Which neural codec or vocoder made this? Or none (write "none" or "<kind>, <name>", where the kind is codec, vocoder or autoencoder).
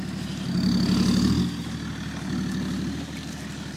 none